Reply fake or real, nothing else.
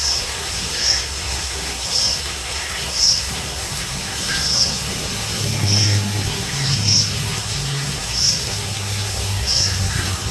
fake